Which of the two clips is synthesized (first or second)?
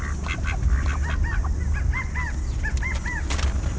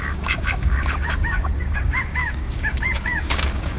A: second